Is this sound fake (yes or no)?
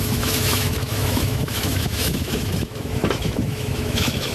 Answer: yes